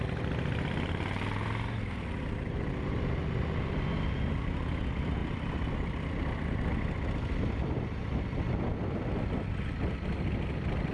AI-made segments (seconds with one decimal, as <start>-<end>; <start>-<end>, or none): none